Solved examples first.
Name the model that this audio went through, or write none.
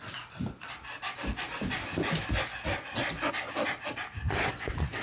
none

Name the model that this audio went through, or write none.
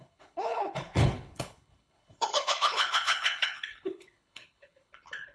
codec, HILCodec